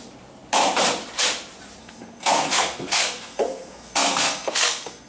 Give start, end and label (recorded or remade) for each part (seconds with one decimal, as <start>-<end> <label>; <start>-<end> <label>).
0.0-1.8 recorded; 1.8-5.1 remade